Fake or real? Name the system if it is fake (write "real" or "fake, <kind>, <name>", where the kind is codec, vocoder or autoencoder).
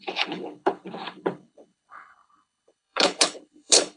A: fake, codec, HILCodec